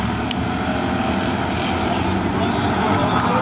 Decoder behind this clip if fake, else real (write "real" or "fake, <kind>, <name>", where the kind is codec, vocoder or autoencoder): real